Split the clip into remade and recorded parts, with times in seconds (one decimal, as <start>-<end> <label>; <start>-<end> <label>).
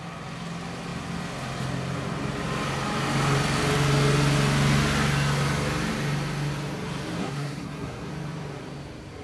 0.0-7.2 recorded; 7.2-8.1 remade; 8.1-9.2 recorded